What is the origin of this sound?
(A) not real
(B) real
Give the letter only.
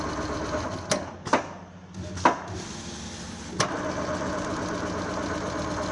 B